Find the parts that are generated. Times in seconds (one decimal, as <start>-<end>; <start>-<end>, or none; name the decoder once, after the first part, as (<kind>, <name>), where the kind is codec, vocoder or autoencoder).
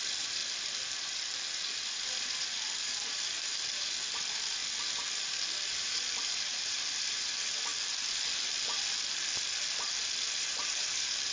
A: 0.0-0.4 (vocoder, BigVGAN v2); 1.5-4.6; 5.2-7.7; 10.4-11.3